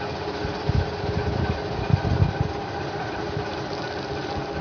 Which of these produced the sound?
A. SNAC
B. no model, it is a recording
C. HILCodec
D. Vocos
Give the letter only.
B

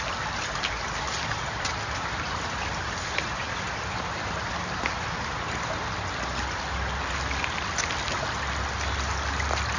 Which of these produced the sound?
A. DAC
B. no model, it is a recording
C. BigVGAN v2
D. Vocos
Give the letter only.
B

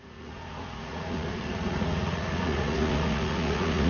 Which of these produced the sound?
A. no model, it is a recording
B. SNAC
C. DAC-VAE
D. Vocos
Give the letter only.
D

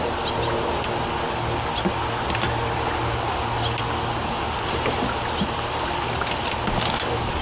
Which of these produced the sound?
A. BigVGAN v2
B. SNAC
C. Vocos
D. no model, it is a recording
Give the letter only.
D